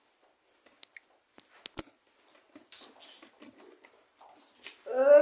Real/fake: real